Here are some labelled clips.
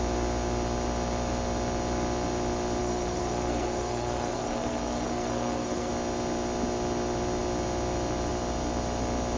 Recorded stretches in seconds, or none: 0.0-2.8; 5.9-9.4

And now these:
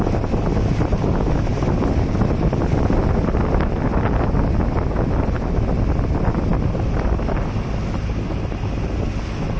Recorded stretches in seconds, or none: 0.0-9.6

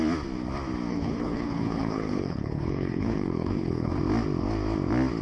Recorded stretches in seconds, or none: 0.0-0.9; 4.0-5.2

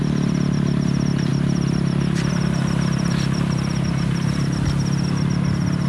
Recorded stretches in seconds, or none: 0.0-5.9

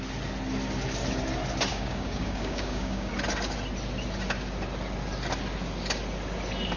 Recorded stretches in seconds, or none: 0.0-1.7; 3.1-6.8

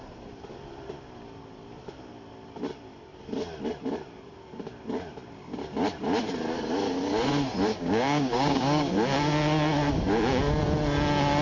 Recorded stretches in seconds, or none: 0.0-7.7; 8.9-11.4